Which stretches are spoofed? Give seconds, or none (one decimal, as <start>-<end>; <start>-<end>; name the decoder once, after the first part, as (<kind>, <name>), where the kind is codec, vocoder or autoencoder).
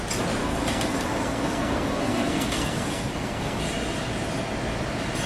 0.4-3.6 (codec, SNAC)